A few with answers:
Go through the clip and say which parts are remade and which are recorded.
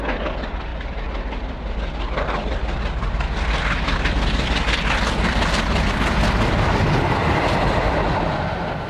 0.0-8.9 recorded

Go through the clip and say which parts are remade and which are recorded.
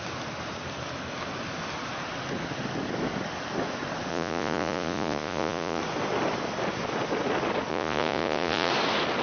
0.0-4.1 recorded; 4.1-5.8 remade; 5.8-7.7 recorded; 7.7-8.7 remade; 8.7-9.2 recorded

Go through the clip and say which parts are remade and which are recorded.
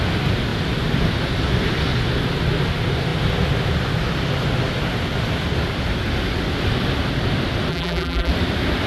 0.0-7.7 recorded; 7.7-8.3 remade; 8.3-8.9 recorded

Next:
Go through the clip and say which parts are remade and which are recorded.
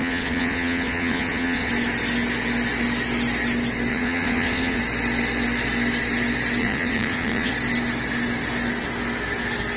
0.0-1.7 remade; 1.7-3.9 recorded; 3.9-4.8 remade; 4.8-6.6 recorded; 6.6-7.5 remade; 7.5-9.8 recorded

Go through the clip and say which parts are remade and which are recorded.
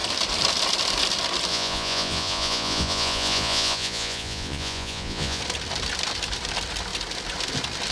0.0-1.5 recorded; 1.5-5.4 remade; 5.4-7.9 recorded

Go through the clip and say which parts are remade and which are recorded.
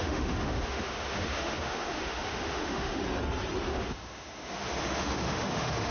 0.0-3.0 remade; 3.0-3.7 recorded; 3.7-5.9 remade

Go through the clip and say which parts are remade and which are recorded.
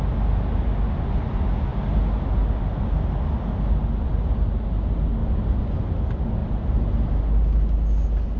0.0-5.2 recorded; 5.2-6.0 remade; 6.0-6.4 recorded; 6.4-6.9 remade; 6.9-8.4 recorded